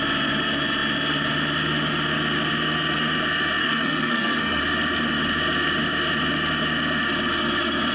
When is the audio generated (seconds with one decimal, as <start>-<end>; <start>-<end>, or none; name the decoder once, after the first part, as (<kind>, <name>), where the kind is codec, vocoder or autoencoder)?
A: 3.6-4.6 (codec, SNAC)